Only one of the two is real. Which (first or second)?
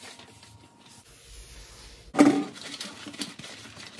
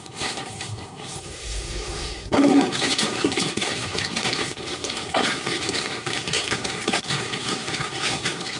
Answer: first